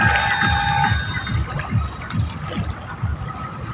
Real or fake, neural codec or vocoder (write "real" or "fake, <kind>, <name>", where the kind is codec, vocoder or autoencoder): real